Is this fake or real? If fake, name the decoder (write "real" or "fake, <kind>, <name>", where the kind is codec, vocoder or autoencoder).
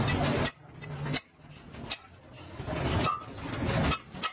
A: real